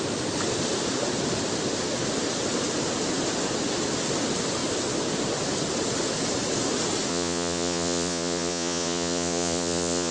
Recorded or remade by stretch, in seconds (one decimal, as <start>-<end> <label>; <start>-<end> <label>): 0.0-7.1 recorded; 7.1-10.1 remade